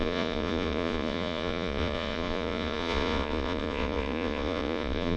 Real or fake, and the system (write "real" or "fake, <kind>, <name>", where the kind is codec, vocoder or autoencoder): fake, vocoder, Vocos